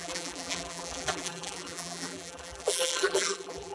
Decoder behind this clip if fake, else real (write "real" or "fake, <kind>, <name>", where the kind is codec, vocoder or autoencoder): fake, vocoder, BigVGAN v2